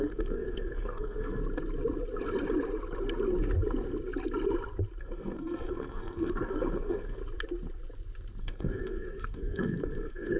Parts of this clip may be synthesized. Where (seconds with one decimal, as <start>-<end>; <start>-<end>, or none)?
0.0-1.4; 5.0-7.2; 8.4-10.4